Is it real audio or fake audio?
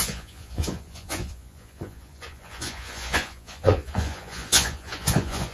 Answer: fake